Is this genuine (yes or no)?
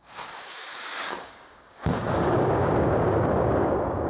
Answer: no